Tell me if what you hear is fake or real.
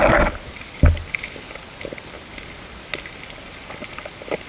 real